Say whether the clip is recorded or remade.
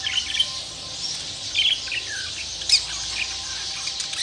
recorded